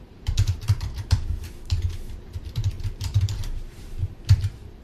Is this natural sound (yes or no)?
no